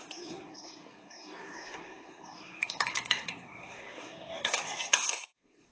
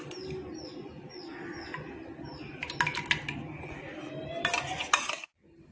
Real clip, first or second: second